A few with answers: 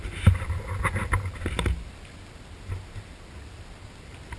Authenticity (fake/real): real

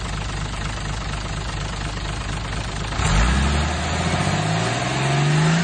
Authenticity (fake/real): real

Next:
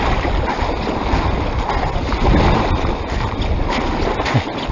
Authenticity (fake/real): real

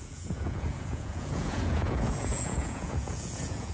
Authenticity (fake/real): fake